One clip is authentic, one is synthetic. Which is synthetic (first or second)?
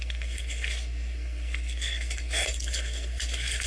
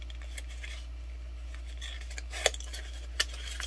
first